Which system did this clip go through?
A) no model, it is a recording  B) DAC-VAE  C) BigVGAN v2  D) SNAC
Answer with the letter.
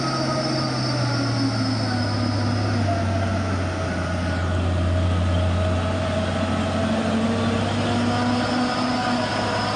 A